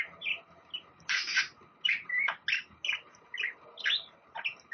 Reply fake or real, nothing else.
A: real